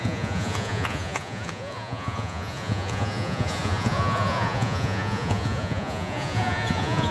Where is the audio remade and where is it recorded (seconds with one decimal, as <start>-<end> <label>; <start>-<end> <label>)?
0.0-7.1 remade